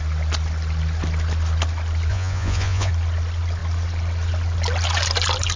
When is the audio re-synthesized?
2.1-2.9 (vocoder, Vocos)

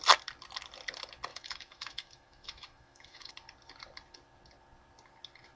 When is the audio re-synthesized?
1.3-3.3 (autoencoder, DAC-VAE)

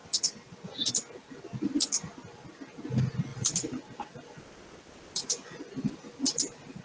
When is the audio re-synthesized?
3.3-6.8 (vocoder, BigVGAN v2)

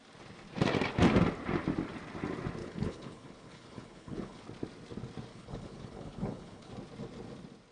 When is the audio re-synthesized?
2.6-4.4 (codec, HILCodec); 5.3-6.7

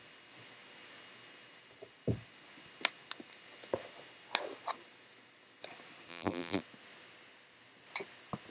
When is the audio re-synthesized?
6.1-6.6 (vocoder, BigVGAN v2)

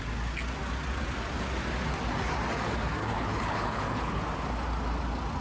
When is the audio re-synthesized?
3.0-4.2 (codec, HILCodec)

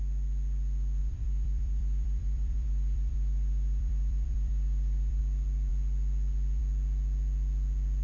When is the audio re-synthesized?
1.0-5.2 (vocoder, BigVGAN v2)